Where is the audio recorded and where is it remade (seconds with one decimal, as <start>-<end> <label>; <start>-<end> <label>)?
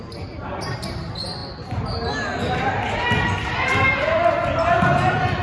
0.0-5.4 recorded